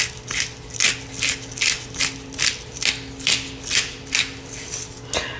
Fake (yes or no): no